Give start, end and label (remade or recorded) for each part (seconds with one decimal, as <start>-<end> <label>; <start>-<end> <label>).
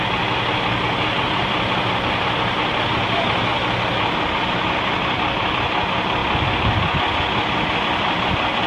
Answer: 0.0-8.7 recorded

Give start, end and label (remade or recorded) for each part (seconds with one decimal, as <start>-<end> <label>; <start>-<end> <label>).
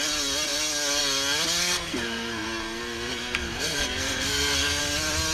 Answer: 0.0-1.6 recorded; 1.6-4.8 remade; 4.8-5.3 recorded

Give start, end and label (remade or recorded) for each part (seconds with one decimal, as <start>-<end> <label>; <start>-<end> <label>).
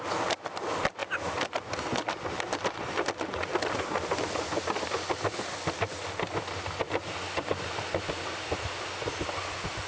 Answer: 0.0-9.9 recorded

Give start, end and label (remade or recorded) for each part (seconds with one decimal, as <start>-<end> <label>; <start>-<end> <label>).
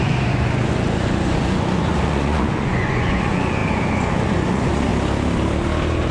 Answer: 0.0-4.9 remade; 4.9-6.1 recorded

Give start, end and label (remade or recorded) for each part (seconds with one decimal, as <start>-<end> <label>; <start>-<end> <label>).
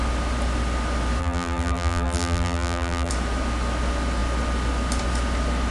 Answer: 0.0-1.2 recorded; 1.2-3.1 remade; 3.1-5.7 recorded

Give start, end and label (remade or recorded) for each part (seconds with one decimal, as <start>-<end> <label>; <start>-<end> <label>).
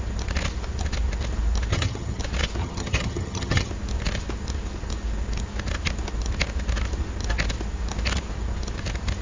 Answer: 0.0-1.7 recorded; 1.7-2.2 remade; 2.2-2.6 recorded; 2.6-3.7 remade; 3.7-9.2 recorded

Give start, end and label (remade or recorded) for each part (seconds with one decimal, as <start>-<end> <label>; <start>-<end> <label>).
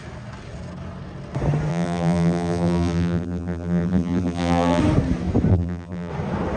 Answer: 0.0-1.7 recorded; 1.7-4.8 remade; 4.8-5.5 recorded; 5.5-6.1 remade; 6.1-6.6 recorded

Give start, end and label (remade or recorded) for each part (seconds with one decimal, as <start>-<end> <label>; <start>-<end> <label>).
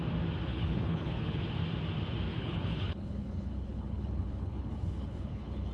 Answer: 0.0-0.5 recorded; 0.5-1.4 remade; 1.4-2.3 recorded; 2.3-5.7 remade